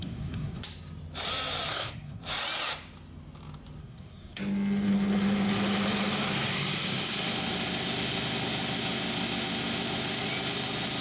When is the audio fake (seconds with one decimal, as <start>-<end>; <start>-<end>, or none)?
0.0-0.6; 1.7-2.2; 3.8-4.4